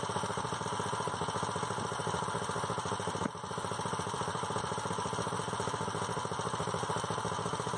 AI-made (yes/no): no